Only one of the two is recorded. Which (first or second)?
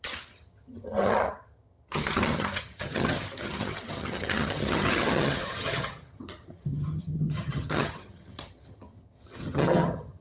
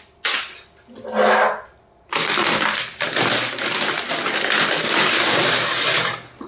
second